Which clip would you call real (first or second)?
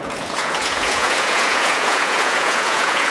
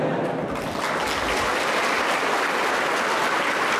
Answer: second